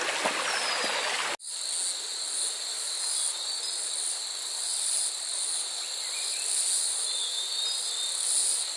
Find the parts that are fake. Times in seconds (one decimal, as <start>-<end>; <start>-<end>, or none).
none